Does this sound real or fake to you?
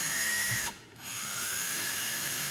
fake